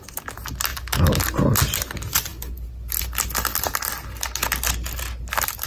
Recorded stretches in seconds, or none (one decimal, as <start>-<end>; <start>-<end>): 0.0-5.7